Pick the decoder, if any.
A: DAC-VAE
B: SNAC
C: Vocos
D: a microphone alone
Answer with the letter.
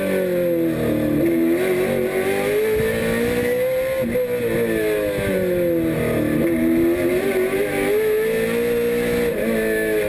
D